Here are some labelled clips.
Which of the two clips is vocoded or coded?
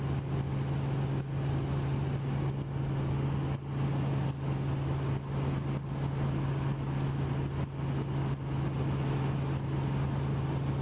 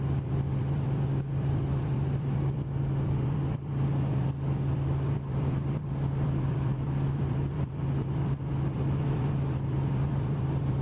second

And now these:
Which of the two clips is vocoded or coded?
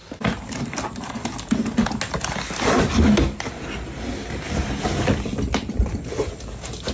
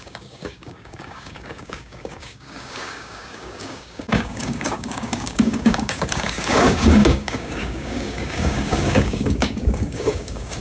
second